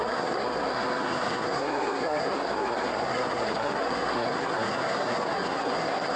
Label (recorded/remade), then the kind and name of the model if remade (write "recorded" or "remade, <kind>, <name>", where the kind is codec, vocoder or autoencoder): remade, codec, SNAC